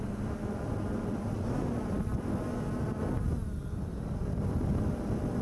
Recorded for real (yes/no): yes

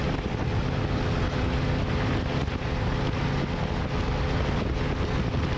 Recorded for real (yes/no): yes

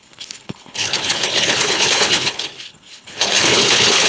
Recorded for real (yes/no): no